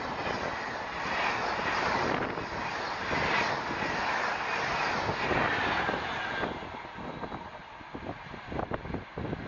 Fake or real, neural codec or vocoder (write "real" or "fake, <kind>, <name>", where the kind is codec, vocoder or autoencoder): real